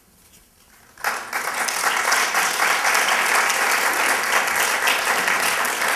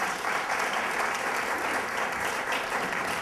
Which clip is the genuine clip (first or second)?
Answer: first